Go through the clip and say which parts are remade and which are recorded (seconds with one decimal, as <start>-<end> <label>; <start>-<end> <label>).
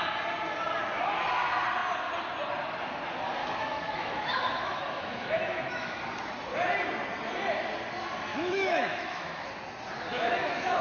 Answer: 0.0-3.4 recorded; 3.4-6.0 remade; 6.0-8.3 recorded; 8.3-9.5 remade; 9.5-10.1 recorded; 10.1-10.8 remade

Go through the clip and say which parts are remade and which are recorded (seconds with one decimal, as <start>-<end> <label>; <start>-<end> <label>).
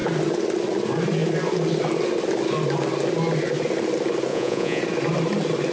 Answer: 0.0-4.3 recorded; 4.3-4.8 remade; 4.8-5.7 recorded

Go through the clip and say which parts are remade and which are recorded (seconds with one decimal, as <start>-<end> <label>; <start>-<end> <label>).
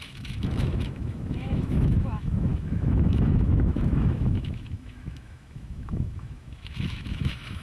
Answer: 0.0-7.6 remade